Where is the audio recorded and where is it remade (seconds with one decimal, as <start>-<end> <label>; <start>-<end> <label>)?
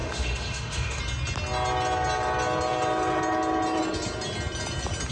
0.0-1.0 remade; 1.0-5.1 recorded